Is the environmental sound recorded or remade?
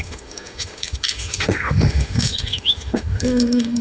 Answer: remade